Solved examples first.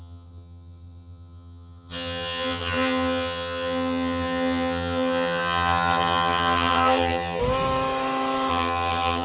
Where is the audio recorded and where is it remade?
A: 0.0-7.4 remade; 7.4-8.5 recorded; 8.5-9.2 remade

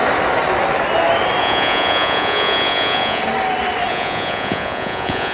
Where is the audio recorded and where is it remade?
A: 0.0-1.4 recorded; 1.4-3.2 remade; 3.2-3.9 recorded; 3.9-5.3 remade